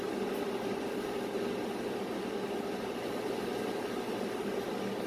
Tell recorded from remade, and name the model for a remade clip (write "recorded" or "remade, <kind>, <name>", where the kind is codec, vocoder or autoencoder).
recorded